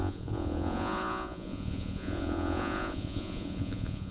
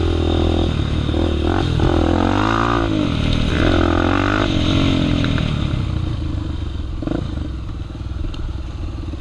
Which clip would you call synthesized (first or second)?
first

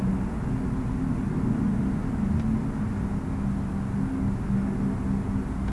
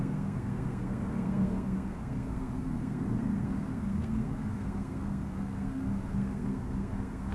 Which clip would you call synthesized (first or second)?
second